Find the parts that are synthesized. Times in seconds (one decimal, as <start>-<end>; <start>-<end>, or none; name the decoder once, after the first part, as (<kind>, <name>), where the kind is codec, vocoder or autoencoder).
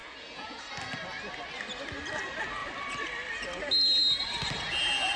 0.0-0.6 (vocoder, Vocos)